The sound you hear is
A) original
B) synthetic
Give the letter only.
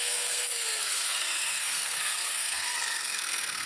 B